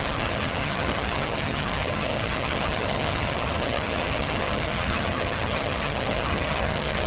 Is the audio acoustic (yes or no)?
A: no